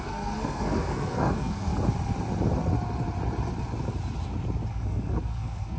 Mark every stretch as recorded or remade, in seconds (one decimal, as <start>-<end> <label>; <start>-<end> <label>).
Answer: 0.0-1.7 remade; 1.7-4.7 recorded; 4.7-5.8 remade